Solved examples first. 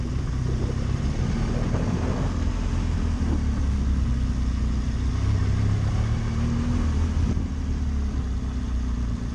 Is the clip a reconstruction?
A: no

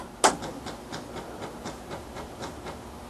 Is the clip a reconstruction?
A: no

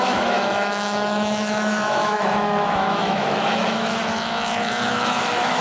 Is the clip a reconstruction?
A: yes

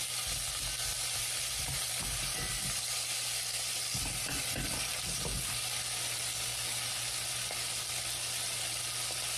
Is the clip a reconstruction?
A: no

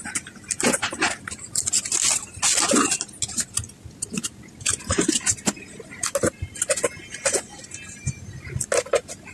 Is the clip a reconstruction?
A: no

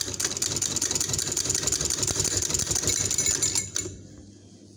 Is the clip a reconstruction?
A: no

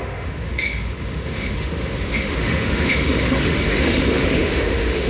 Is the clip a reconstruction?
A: yes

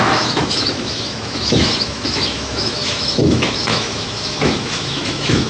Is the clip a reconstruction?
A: yes